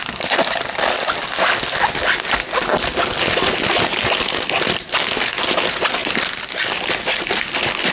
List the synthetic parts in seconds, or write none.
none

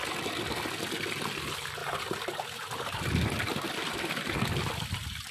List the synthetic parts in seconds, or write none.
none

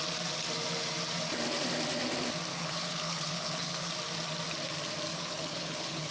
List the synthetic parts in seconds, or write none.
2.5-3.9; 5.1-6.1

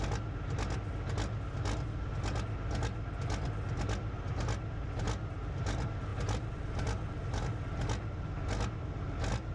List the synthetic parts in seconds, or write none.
none

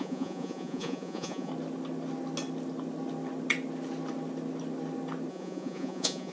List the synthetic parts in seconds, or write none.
0.0-1.5; 5.3-6.3

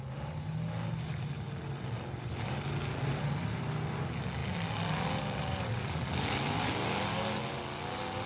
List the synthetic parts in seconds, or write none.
none